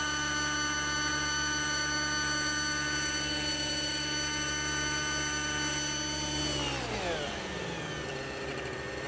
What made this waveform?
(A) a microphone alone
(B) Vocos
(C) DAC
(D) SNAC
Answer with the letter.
A